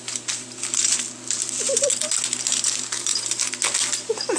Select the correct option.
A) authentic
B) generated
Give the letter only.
A